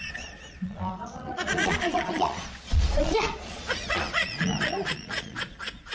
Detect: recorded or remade remade